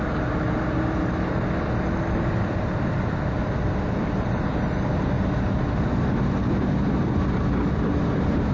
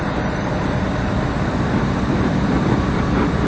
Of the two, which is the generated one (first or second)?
second